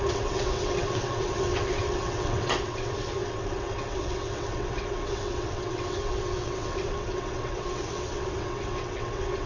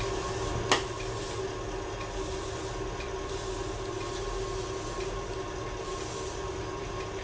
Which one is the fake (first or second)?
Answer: first